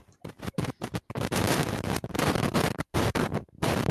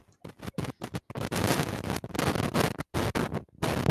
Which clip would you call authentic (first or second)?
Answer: second